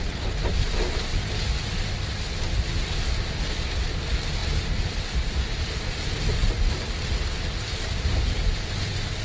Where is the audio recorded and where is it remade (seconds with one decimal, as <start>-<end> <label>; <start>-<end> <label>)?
0.0-4.4 recorded; 4.4-6.1 remade; 6.1-9.2 recorded